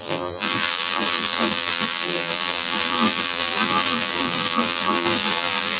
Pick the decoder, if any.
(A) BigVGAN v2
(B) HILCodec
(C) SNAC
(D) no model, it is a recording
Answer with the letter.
A